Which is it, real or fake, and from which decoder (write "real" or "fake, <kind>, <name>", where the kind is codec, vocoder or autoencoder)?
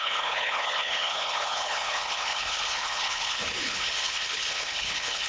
fake, codec, HILCodec